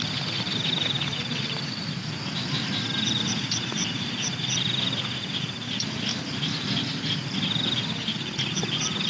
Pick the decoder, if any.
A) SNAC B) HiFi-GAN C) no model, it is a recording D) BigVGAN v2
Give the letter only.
D